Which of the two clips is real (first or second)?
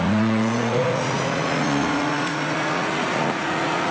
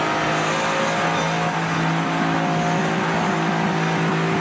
second